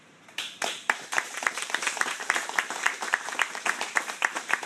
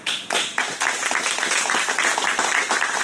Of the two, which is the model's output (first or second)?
first